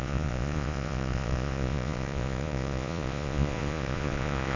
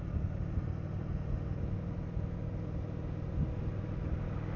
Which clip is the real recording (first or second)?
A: second